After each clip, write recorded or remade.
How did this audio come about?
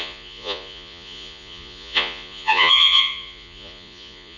remade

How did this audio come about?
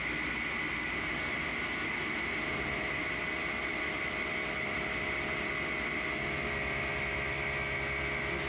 recorded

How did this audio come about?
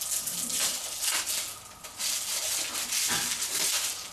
recorded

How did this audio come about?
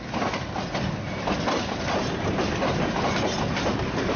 recorded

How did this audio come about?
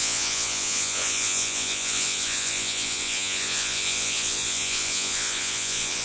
remade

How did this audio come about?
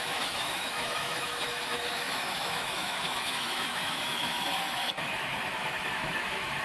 remade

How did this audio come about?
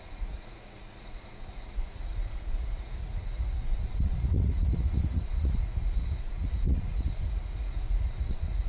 remade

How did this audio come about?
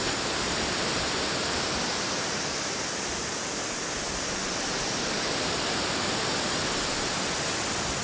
recorded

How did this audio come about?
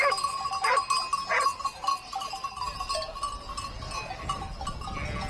recorded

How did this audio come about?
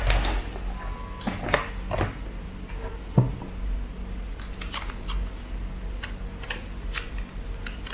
recorded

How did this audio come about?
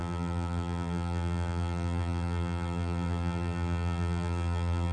remade